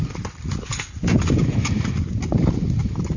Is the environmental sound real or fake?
real